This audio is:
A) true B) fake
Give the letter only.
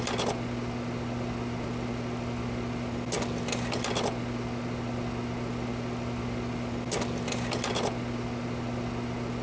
A